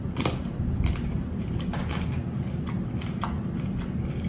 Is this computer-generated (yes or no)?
no